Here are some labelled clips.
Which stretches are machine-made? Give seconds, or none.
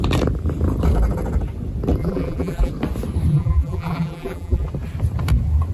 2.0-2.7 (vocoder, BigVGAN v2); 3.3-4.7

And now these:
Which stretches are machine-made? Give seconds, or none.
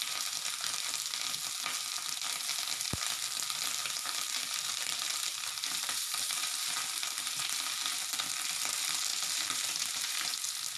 3.8-8.3 (vocoder, BigVGAN v2); 9.1-10.3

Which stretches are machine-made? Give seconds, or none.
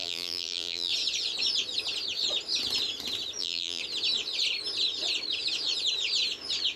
0.0-0.9 (vocoder, BigVGAN v2); 3.4-3.8